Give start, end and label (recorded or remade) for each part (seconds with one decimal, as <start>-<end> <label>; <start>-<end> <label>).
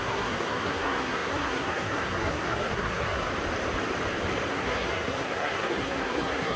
0.0-3.3 remade; 3.3-4.5 recorded; 4.5-6.6 remade